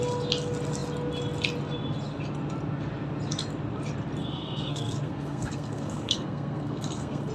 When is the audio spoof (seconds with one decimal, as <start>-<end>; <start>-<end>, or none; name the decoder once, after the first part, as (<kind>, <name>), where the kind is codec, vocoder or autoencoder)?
4.2-7.3 (codec, SNAC)